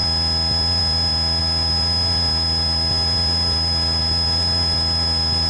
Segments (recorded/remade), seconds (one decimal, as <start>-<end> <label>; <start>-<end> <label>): 0.0-5.5 recorded